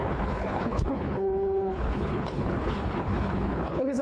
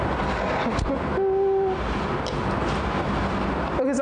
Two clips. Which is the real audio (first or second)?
second